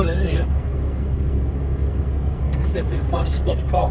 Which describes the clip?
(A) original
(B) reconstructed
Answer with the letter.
B